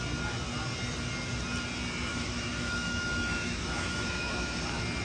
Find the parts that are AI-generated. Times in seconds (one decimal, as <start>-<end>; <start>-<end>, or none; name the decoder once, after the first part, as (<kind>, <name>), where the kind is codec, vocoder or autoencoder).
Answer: 2.1-4.6 (autoencoder, DAC-VAE)